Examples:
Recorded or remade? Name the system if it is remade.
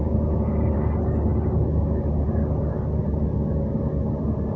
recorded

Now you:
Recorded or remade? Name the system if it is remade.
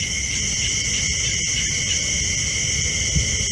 recorded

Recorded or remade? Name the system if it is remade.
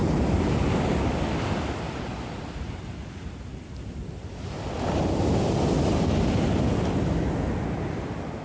recorded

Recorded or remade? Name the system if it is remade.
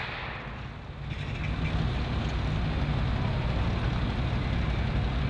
recorded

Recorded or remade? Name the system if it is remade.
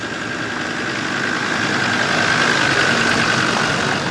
recorded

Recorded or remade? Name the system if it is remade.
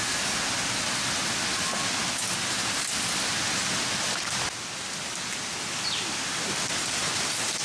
recorded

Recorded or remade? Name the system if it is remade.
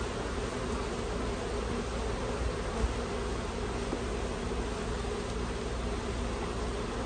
recorded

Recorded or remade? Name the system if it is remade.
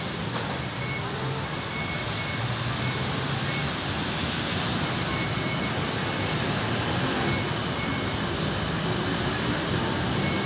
recorded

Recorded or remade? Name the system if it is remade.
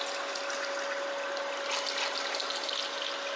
recorded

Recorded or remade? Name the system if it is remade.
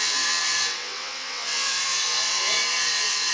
remade, vocoder, WaveNeXt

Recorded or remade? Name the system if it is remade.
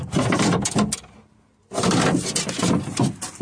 recorded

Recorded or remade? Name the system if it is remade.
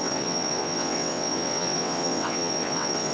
remade, vocoder, WaveNeXt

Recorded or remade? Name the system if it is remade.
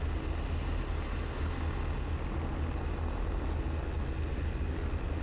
recorded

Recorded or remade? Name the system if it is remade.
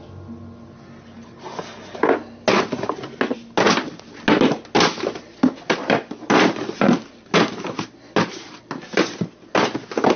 recorded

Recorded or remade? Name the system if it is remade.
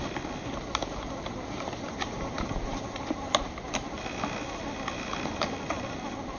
recorded